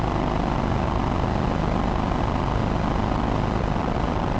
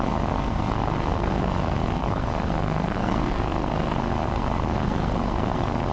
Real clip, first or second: first